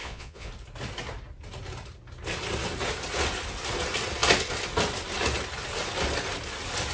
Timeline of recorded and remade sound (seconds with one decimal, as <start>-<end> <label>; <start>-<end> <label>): 0.0-0.5 remade; 0.5-6.9 recorded